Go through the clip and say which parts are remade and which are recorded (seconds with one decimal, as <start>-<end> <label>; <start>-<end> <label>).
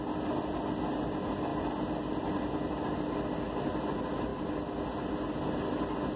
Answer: 0.0-6.2 recorded